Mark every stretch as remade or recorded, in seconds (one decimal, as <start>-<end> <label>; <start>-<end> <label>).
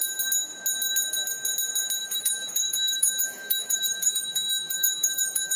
0.0-2.0 recorded; 2.0-5.6 remade